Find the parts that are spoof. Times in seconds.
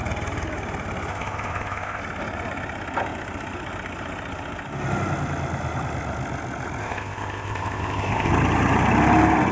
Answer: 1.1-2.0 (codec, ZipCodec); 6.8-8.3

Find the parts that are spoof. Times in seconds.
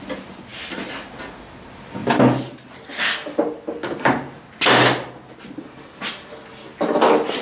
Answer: none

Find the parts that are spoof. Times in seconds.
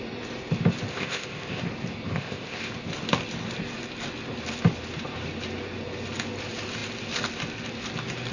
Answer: 0.9-1.6 (codec, ZipCodec); 2.1-2.7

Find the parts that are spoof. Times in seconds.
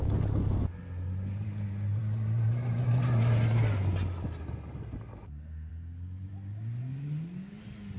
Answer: none